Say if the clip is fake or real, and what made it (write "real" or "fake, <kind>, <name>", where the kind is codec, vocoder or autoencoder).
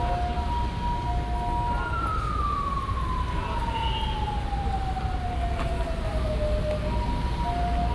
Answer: real